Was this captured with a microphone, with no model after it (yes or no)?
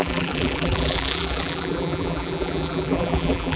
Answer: no